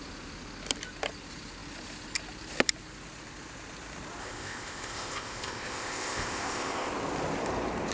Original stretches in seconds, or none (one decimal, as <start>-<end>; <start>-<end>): 0.0-4.2; 6.9-7.9

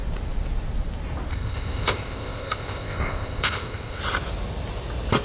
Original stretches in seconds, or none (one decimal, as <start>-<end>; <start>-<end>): 0.0-1.3; 4.0-5.2

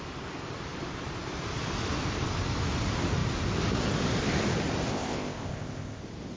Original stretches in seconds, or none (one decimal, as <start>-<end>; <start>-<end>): 0.0-4.9; 6.0-6.4